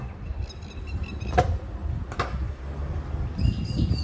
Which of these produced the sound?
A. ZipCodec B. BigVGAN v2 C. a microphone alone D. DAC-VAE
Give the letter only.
C